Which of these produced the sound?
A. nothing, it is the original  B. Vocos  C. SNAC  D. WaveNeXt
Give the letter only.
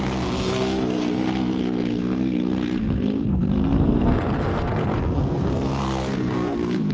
C